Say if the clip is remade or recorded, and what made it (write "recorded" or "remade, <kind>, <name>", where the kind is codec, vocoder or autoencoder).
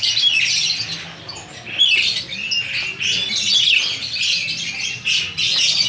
recorded